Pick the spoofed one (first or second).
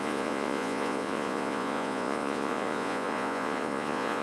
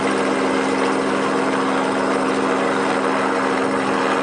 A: first